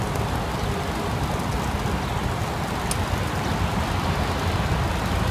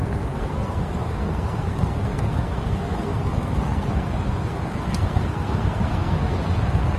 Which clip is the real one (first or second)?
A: first